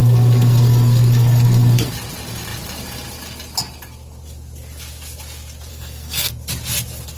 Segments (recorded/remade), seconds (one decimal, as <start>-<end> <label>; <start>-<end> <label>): 0.0-1.9 remade; 1.9-5.7 recorded; 5.7-6.3 remade; 6.3-7.2 recorded